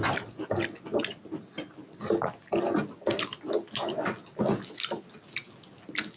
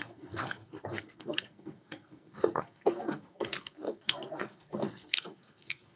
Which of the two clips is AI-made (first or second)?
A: second